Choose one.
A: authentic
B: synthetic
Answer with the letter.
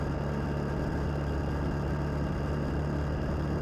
A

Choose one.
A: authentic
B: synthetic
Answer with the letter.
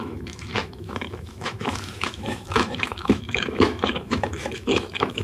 B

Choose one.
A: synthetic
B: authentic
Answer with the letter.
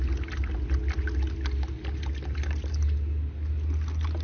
B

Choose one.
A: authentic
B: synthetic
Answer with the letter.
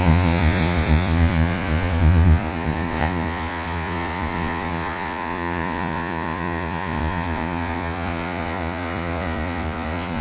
B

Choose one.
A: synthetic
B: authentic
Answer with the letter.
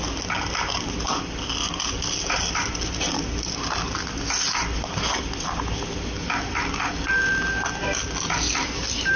B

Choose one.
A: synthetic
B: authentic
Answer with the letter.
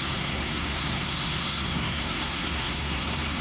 A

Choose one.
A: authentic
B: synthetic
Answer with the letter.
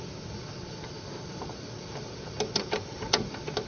A